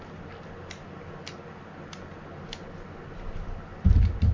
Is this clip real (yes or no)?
yes